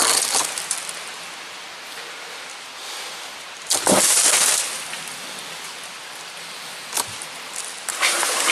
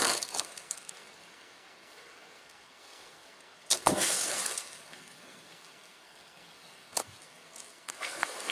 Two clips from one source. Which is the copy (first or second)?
second